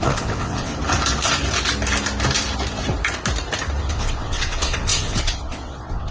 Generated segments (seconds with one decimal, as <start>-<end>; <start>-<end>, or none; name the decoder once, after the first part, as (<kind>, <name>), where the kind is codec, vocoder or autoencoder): 0.0-0.7 (vocoder, WaveNeXt); 3.8-6.1